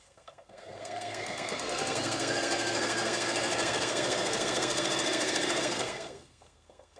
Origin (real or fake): fake